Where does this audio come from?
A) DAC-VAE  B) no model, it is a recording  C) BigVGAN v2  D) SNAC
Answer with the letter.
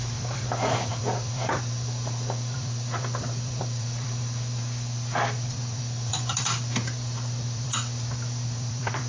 C